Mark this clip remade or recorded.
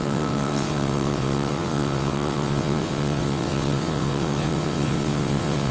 remade